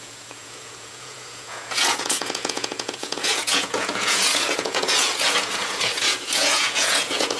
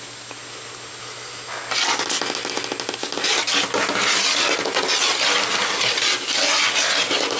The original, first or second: second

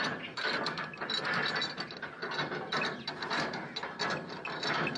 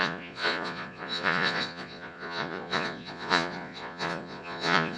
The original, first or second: first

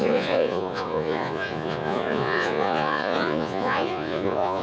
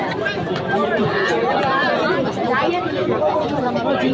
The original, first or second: second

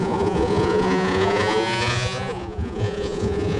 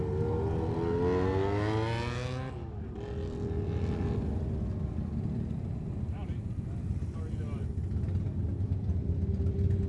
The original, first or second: second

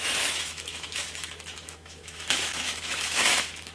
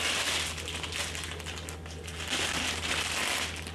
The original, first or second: second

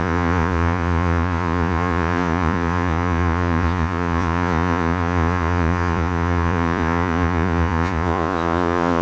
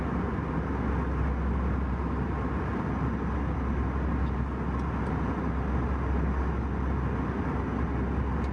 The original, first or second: second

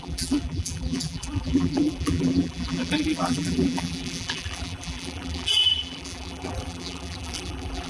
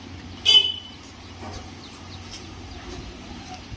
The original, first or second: second